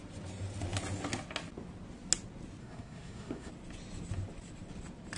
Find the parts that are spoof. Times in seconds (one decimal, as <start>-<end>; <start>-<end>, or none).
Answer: 2.6-3.5